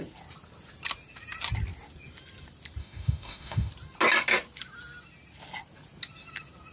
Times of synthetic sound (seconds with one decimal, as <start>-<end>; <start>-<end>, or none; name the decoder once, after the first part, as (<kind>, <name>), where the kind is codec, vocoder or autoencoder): 2.8-3.7 (autoencoder, DAC-VAE)